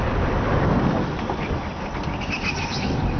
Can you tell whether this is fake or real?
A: real